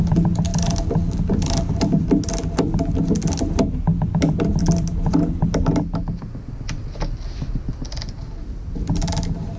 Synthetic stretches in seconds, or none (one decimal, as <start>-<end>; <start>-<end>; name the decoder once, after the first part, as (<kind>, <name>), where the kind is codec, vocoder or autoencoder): none

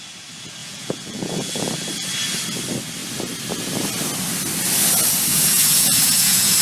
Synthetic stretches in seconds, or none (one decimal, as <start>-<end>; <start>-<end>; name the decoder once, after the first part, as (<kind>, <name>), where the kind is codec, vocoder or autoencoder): 0.6-1.7 (vocoder, Vocos); 5.3-6.6

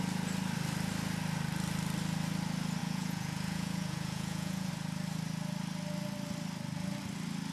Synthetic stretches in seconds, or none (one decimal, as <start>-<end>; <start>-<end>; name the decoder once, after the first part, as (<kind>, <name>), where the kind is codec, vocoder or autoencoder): 2.8-4.7 (vocoder, Vocos)